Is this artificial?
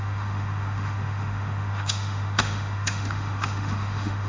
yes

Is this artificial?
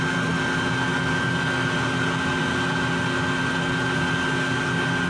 no